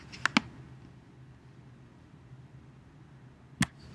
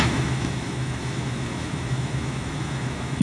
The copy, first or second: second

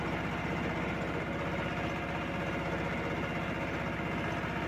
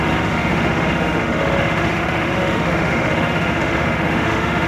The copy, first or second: second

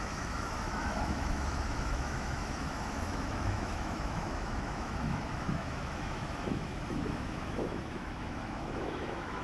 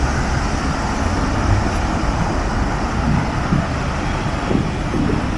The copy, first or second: first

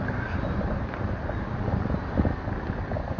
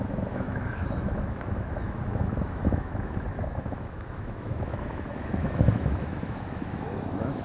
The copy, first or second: second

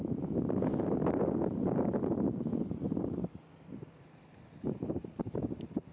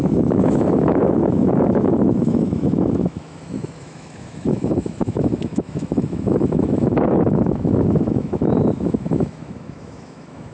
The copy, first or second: second